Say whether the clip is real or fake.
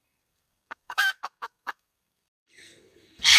fake